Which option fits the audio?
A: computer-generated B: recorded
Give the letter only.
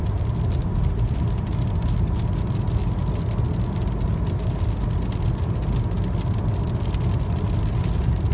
B